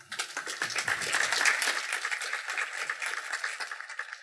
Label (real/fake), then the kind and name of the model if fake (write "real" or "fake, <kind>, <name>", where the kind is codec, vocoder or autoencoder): real